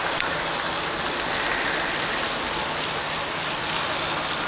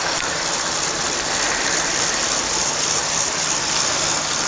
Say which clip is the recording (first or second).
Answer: first